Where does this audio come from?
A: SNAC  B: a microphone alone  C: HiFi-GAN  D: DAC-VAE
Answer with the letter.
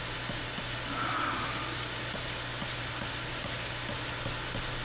B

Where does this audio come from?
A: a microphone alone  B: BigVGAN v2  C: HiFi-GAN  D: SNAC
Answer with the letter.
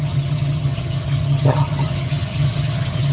C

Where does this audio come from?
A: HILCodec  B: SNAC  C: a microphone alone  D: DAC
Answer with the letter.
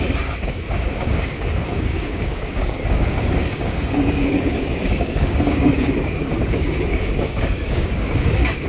D